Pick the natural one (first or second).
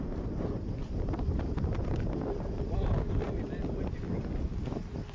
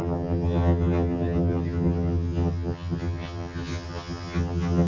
first